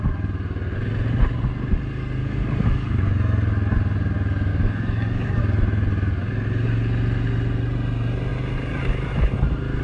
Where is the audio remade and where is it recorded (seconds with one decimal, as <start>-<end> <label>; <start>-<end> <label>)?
0.0-2.2 recorded; 2.2-3.0 remade; 3.0-4.5 recorded; 4.5-5.4 remade; 5.4-9.8 recorded